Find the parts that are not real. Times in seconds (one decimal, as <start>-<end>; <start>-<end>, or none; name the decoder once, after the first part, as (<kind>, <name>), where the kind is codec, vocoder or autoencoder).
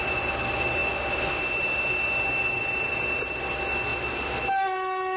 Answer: none